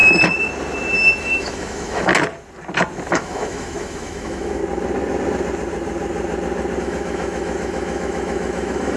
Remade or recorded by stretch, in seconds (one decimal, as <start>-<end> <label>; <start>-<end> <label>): 0.0-1.2 recorded; 1.2-2.1 remade; 2.1-3.1 recorded; 3.1-4.6 remade; 4.6-6.8 recorded; 6.8-9.0 remade